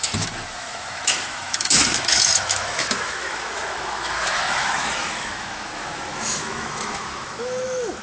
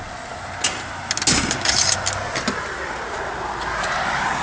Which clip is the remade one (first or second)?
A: first